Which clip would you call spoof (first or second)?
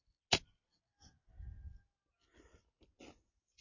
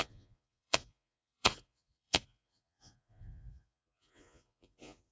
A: second